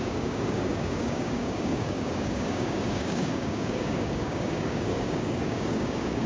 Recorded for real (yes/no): no